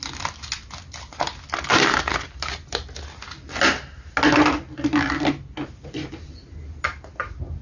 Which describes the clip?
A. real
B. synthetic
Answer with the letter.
A